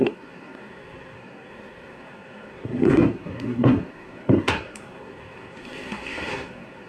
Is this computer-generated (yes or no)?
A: yes